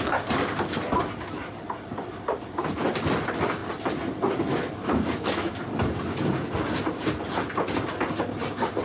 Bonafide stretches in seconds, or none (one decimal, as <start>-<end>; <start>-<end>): 0.0-4.8; 5.5-8.8